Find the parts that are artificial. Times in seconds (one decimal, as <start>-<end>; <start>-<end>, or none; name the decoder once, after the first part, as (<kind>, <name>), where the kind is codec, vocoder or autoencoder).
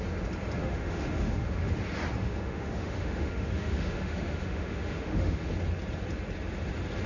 0.6-1.7 (autoencoder, DAC-VAE); 2.2-5.5